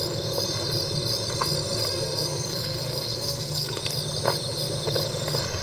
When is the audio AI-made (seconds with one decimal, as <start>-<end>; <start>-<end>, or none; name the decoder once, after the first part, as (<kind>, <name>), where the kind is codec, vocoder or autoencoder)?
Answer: 1.9-3.8 (codec, SNAC)